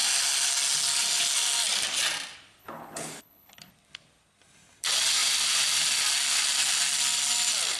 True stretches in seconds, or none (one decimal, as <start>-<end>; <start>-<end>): 0.0-2.6; 3.7-7.8